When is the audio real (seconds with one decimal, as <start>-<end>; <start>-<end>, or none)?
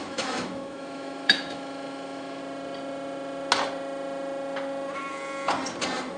2.4-6.2